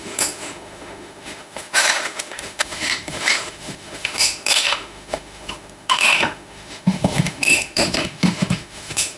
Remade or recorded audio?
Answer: remade